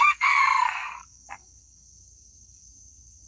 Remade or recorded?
remade